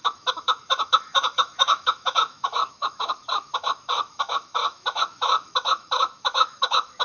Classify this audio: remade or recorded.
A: remade